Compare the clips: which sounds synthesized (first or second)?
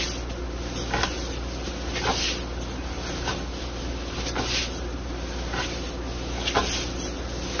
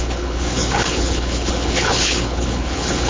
second